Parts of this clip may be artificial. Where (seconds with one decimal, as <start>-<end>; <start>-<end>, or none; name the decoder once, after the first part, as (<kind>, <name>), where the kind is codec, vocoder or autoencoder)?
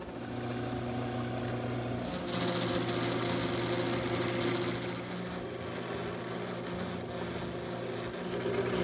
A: none